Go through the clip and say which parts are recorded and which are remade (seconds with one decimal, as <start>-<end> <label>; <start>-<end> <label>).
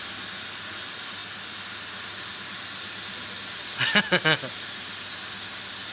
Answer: 0.0-5.9 recorded